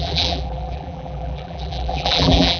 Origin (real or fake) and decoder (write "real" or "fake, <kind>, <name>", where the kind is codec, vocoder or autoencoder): fake, vocoder, BigVGAN v2